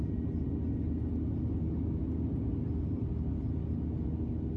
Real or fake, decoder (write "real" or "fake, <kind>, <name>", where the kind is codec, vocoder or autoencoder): real